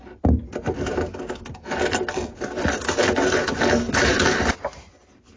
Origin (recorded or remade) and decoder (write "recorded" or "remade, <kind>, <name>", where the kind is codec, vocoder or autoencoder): recorded